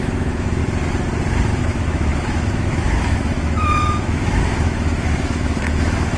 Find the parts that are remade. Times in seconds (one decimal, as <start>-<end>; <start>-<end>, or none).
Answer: 0.0-0.6; 1.6-6.2